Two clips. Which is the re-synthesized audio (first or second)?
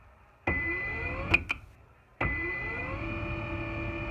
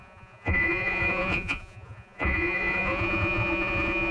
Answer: second